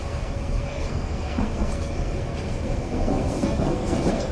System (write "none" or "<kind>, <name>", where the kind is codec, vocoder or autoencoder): codec, SNAC